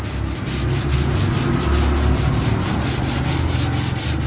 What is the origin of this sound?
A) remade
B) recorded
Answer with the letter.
B